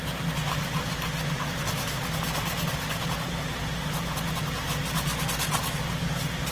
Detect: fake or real real